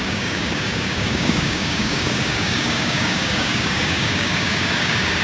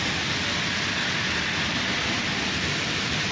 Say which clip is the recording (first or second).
second